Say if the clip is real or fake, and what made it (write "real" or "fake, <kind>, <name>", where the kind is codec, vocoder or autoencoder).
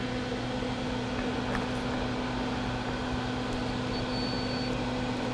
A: real